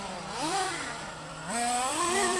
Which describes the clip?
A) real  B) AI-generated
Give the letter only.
B